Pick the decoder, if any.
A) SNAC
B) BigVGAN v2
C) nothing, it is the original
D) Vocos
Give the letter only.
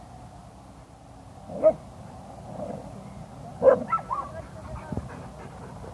C